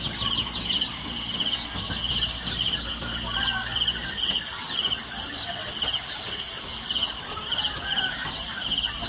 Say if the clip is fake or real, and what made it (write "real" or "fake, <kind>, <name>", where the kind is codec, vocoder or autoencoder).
real